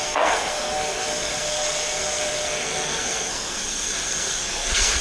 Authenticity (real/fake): fake